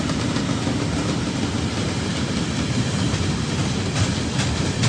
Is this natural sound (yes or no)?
yes